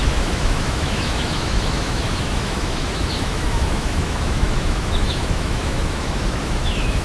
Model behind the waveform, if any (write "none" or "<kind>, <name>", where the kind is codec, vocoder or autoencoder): autoencoder, DAC-VAE